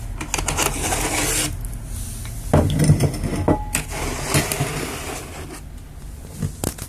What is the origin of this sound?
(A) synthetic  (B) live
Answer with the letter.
B